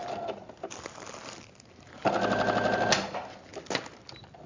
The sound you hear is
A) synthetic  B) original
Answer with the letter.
B